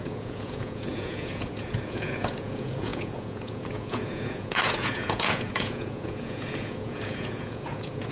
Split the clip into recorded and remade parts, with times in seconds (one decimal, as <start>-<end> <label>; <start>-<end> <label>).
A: 0.0-8.1 remade